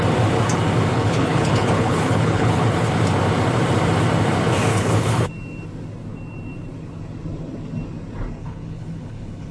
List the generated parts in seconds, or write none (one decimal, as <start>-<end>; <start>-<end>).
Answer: 0.9-2.9; 4.7-5.3; 8.4-9.5